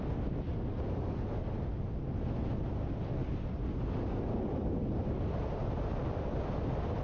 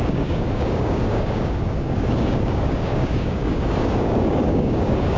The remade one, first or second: second